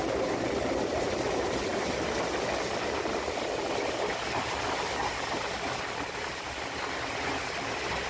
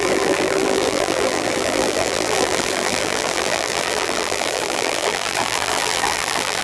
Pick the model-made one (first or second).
second